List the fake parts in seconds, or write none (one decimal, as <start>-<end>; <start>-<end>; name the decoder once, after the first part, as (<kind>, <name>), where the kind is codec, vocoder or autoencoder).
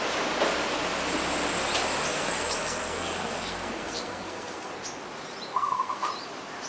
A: 2.1-4.7 (codec, SNAC); 5.5-6.1